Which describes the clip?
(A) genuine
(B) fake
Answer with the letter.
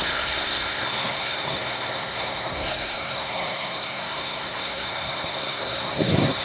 B